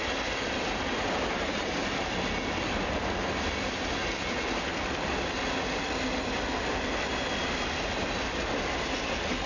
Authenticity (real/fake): real